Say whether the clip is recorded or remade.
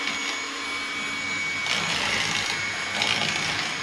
recorded